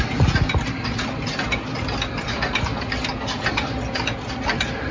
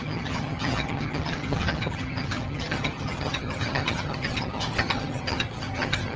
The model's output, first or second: second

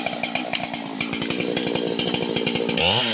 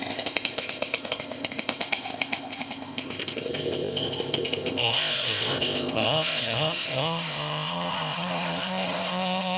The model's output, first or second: second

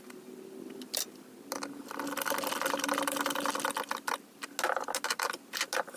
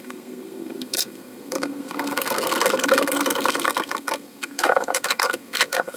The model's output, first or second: second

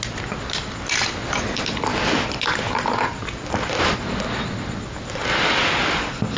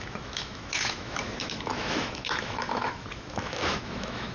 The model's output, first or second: second